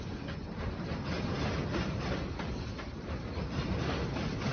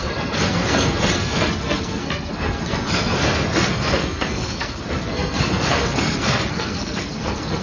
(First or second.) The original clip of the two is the first